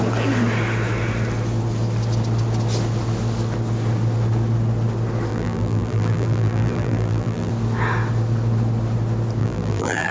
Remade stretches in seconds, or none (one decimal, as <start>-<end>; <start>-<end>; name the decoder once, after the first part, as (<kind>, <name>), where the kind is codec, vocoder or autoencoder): 5.3-7.5 (vocoder, BigVGAN v2); 9.4-10.1